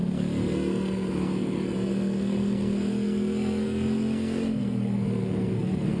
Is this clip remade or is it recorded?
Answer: remade